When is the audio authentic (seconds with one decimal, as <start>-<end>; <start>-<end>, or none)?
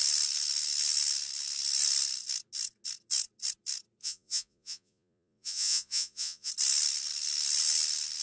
0.0-4.0; 6.5-8.2